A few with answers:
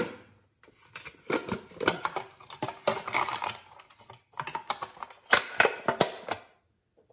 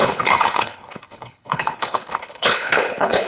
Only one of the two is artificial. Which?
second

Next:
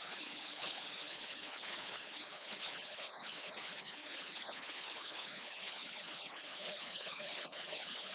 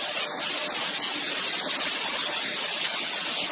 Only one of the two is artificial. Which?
first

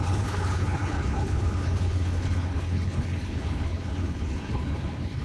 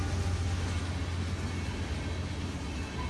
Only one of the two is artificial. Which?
first